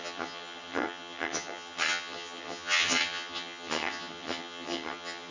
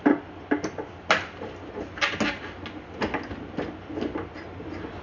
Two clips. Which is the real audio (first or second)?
second